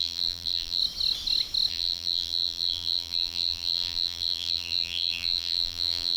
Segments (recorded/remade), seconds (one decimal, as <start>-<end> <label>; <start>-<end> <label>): 0.0-0.8 remade; 0.8-1.7 recorded; 1.7-6.2 remade